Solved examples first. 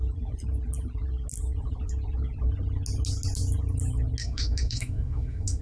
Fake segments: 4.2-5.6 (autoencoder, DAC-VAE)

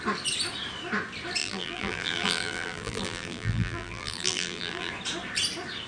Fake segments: 1.4-4.9 (vocoder, BigVGAN v2)

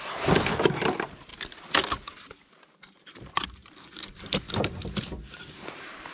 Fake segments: 0.0-1.3 (vocoder, BigVGAN v2); 2.5-6.1

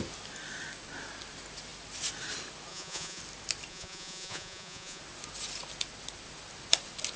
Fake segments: 2.7-3.2 (vocoder, Vocos); 3.7-5.0

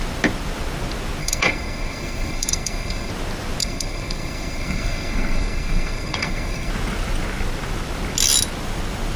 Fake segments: 1.2-3.1 (codec, SNAC); 3.6-6.7

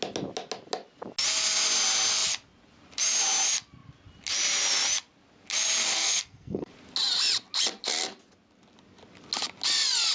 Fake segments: 5.9-6.7 (codec, SNAC)